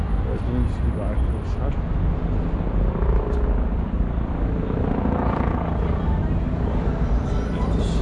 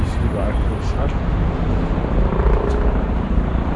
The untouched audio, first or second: first